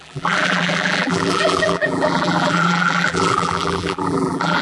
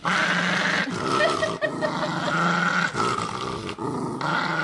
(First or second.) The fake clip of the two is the first